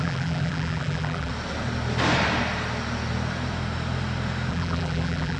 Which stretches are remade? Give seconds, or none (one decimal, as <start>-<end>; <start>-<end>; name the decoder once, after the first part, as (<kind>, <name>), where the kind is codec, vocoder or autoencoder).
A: 0.0-1.3 (vocoder, BigVGAN v2); 4.5-5.4